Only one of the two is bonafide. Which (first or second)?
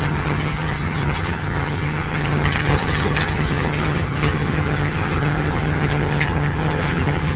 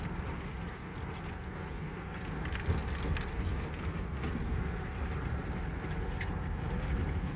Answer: second